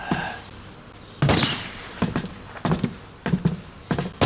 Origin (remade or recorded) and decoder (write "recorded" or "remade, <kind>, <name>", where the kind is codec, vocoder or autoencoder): recorded